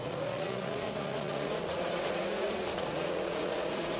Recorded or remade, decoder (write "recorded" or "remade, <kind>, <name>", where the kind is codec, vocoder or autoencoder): remade, vocoder, Vocos